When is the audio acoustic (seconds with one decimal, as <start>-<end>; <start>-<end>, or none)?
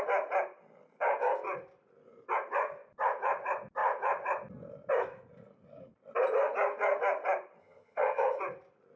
0.0-7.6; 8.4-9.0